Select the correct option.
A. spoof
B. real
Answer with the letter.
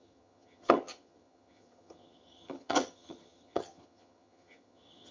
A